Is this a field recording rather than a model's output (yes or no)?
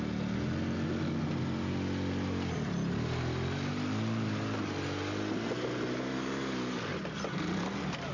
yes